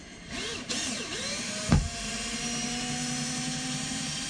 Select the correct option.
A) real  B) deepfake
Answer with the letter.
B